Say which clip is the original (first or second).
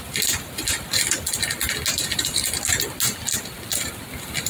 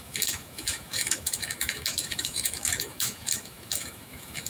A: first